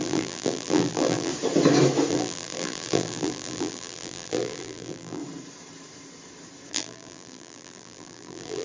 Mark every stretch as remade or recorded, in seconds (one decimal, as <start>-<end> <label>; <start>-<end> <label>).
0.0-1.3 remade; 1.3-2.1 recorded; 2.1-5.2 remade; 5.2-6.7 recorded; 6.7-8.6 remade